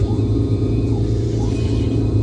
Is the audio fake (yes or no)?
no